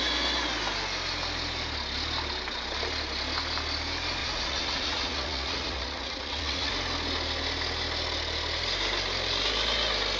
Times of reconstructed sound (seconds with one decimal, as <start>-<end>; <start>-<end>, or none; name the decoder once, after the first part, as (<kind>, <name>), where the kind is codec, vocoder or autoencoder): 4.2-6.7 (vocoder, Vocos)